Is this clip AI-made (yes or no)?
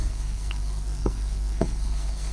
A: yes